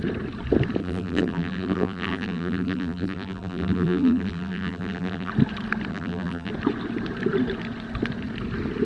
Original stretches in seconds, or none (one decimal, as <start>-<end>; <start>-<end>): 0.0-0.8; 5.3-5.9; 6.5-8.8

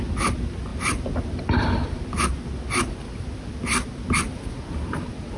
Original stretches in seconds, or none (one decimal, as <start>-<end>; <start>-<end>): 0.0-5.4

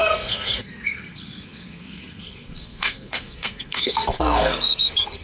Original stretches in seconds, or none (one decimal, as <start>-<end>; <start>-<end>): none

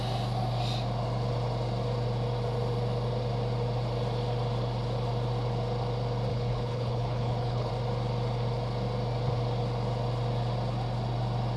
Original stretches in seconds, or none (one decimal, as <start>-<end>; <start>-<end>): 0.0-6.3; 7.7-11.6

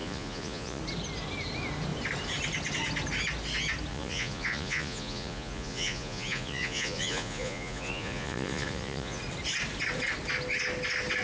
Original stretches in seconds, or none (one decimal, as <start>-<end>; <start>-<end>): 0.8-3.9; 9.2-11.2